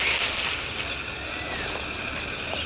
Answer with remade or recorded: recorded